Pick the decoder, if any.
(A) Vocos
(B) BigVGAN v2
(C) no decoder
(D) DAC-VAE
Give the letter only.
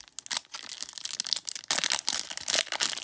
C